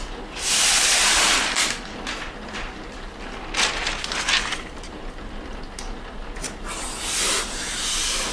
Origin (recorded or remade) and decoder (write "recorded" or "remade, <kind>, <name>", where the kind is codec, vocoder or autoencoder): recorded